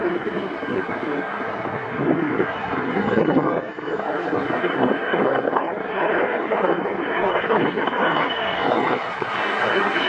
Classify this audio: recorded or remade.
remade